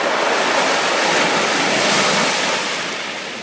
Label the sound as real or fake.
real